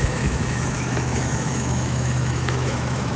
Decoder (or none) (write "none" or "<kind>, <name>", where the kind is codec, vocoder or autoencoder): autoencoder, DAC-VAE